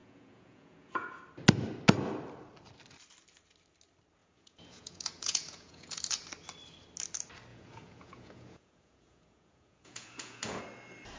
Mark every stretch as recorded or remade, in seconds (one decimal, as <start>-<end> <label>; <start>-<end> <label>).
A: 0.0-1.2 remade; 1.2-4.2 recorded; 4.2-6.0 remade; 6.0-7.5 recorded; 7.5-10.6 remade; 10.6-11.2 recorded